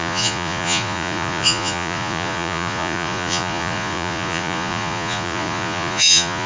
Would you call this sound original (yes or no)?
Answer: no